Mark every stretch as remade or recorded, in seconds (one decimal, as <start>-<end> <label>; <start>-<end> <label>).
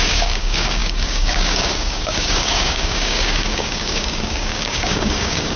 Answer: 0.0-5.6 remade